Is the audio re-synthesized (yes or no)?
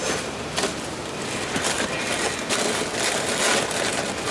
no